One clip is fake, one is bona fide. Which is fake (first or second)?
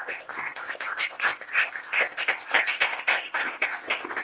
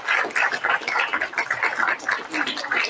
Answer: first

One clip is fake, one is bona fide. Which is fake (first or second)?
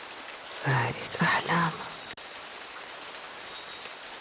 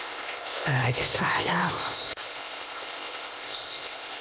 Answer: second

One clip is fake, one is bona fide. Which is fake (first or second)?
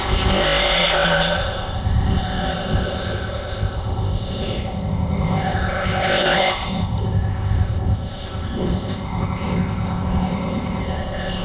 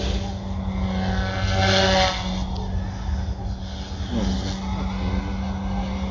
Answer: first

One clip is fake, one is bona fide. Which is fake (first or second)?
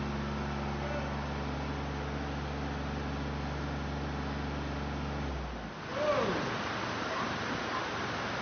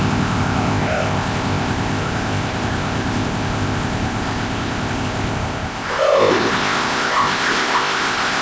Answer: second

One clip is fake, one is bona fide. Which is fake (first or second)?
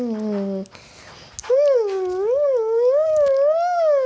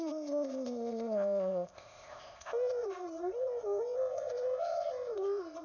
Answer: second